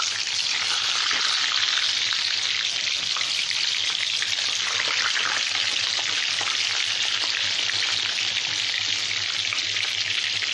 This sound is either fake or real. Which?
real